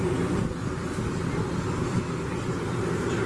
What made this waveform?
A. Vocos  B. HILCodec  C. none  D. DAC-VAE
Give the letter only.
C